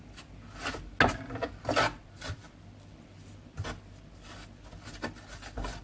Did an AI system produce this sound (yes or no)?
no